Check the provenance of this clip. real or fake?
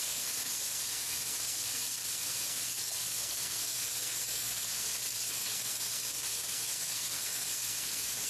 fake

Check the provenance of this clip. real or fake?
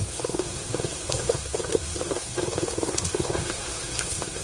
fake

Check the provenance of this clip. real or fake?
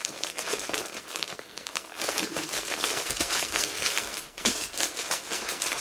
fake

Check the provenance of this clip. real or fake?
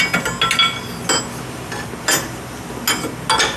real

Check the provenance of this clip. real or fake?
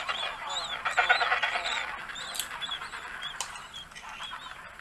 real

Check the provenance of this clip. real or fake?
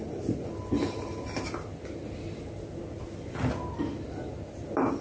real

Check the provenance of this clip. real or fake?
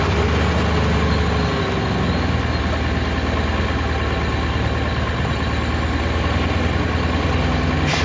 real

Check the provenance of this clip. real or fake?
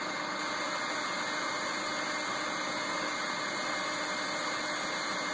real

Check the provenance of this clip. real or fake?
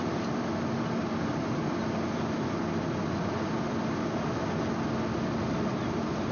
real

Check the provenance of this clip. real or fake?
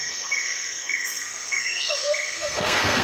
fake